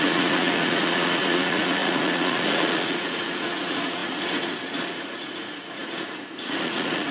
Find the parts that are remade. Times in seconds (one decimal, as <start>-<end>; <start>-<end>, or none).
0.0-7.1

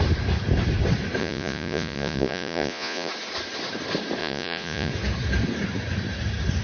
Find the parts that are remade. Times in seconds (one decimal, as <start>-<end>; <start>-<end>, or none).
1.2-3.1; 4.2-4.9

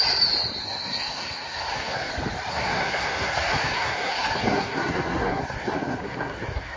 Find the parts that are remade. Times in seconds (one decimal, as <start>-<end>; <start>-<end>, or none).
0.6-2.1; 2.5-6.8

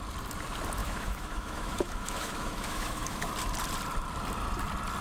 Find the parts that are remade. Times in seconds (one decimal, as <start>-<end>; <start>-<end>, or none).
0.8-3.3

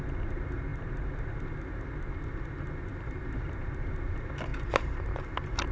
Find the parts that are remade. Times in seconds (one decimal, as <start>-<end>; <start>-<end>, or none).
2.9-3.4; 4.5-5.2